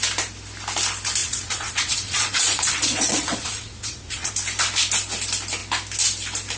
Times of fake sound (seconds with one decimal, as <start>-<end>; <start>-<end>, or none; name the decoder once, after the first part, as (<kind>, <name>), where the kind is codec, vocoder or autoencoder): 1.2-4.3 (vocoder, Vocos)